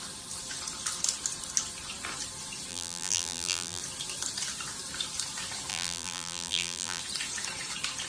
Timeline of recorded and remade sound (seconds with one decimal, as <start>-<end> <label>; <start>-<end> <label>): 0.0-2.7 recorded; 2.7-3.8 remade; 3.8-5.7 recorded; 5.7-7.0 remade; 7.0-8.1 recorded